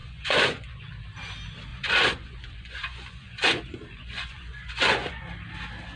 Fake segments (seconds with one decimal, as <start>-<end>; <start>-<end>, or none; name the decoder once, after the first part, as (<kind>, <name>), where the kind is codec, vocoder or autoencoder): 0.0-0.9 (vocoder, Vocos); 1.7-5.2